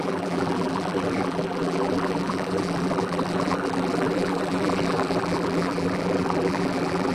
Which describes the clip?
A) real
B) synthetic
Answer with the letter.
B